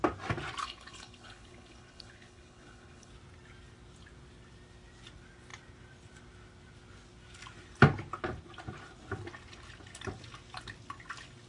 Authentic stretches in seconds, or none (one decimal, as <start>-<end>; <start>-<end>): 0.0-0.6; 3.1-11.5

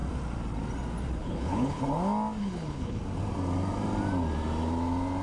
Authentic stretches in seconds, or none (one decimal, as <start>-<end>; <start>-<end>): 0.0-1.2; 1.8-2.4; 3.0-5.2